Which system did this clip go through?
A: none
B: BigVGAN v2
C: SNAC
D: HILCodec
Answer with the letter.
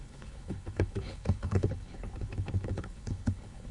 D